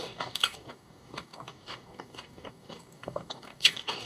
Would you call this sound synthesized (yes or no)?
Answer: yes